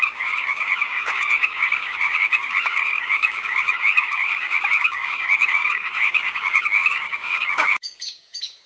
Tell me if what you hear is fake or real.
fake